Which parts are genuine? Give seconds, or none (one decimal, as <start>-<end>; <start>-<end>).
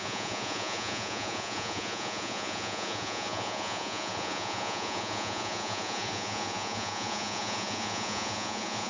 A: none